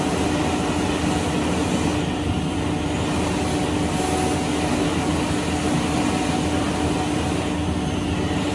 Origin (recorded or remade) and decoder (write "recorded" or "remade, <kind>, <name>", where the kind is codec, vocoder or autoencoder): recorded